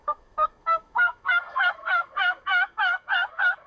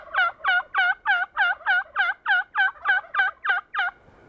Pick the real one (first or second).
second